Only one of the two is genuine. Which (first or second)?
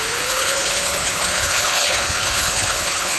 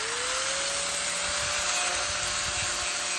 second